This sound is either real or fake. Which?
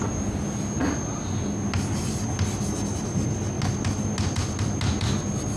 real